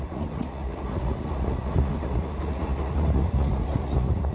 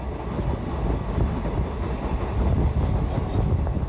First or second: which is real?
second